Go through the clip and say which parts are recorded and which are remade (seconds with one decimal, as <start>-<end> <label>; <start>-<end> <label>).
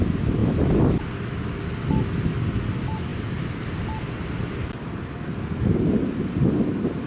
0.0-3.1 recorded; 3.1-3.8 remade; 3.8-7.1 recorded